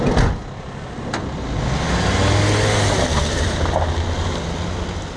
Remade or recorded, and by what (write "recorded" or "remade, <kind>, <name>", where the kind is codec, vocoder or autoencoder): recorded